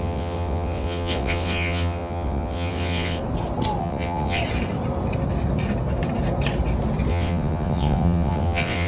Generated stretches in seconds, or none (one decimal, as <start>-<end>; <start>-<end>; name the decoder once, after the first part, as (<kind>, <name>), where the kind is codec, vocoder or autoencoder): 0.0-3.2 (vocoder, WaveNeXt); 3.8-4.4; 7.1-8.9